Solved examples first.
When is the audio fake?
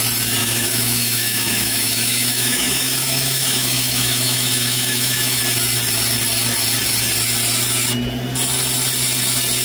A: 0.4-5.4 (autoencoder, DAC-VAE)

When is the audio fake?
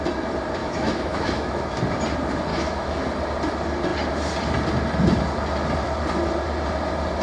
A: 0.6-1.8 (autoencoder, DAC-VAE); 2.5-3.0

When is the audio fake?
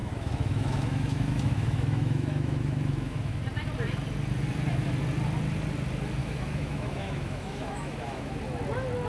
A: 0.0-3.4 (autoencoder, DAC-VAE); 6.2-8.4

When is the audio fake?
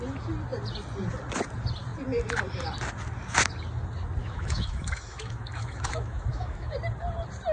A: 4.2-6.7 (autoencoder, DAC-VAE)